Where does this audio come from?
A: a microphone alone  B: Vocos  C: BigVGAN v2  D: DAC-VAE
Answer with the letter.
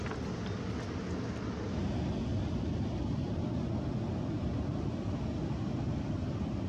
A